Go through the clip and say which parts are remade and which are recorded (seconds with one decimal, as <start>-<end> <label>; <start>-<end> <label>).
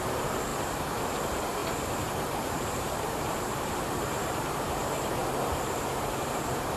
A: 0.0-6.8 remade